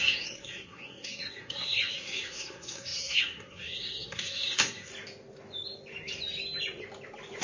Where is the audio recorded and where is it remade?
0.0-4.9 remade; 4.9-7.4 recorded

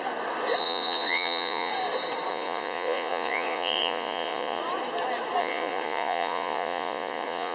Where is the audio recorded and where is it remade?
0.0-0.6 recorded; 0.6-1.7 remade; 1.7-2.3 recorded; 2.3-4.6 remade; 4.6-5.4 recorded; 5.4-7.5 remade

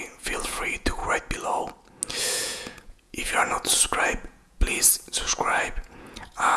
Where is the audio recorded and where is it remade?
0.0-1.0 remade; 1.0-2.2 recorded; 2.2-6.6 remade

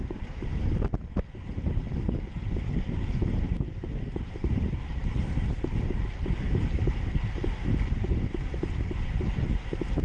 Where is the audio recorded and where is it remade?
0.0-10.0 recorded